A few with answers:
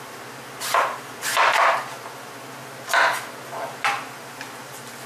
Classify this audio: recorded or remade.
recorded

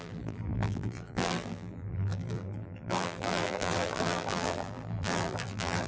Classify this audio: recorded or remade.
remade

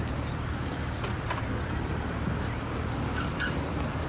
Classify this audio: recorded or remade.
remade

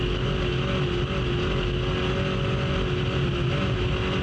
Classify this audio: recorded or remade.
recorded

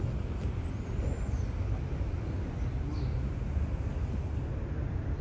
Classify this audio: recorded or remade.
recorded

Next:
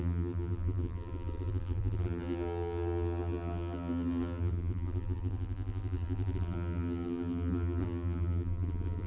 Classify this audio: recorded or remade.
remade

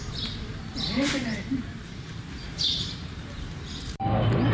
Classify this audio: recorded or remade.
remade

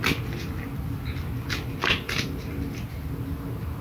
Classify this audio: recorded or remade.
recorded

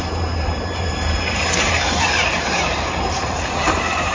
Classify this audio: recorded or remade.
remade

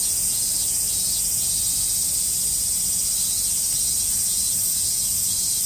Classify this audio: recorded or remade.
recorded